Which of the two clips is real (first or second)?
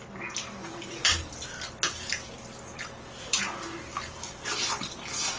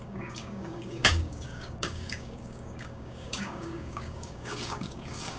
first